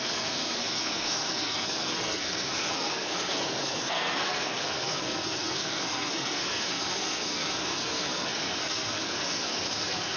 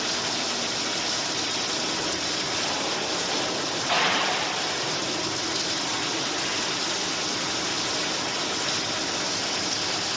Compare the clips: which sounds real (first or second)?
second